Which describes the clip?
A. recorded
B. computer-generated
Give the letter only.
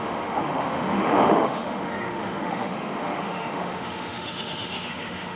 B